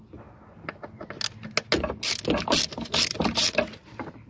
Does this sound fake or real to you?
real